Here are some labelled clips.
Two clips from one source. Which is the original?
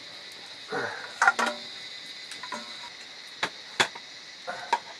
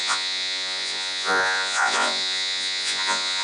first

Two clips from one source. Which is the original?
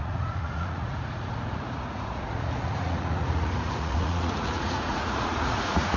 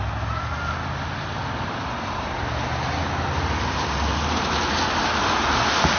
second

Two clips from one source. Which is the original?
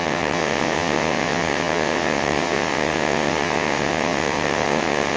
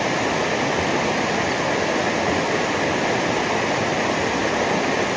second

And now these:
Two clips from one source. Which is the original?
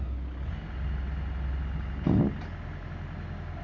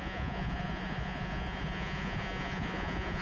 first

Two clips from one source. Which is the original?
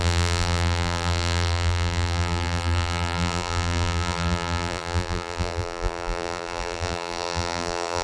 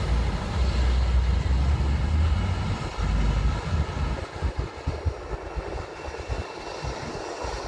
second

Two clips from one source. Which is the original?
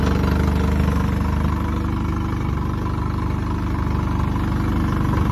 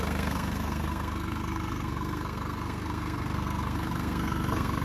first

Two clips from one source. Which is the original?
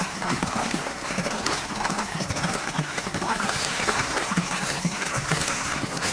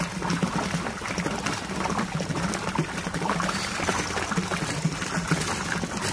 second